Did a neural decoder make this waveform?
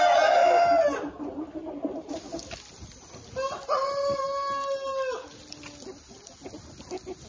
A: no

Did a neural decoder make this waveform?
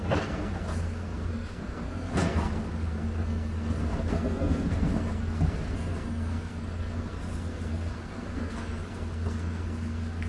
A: yes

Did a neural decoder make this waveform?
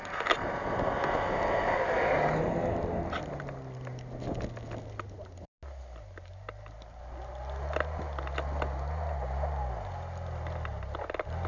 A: no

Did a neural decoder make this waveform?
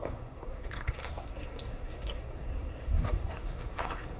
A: yes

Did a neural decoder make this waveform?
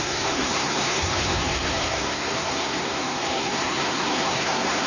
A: yes